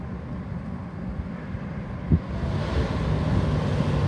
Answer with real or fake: real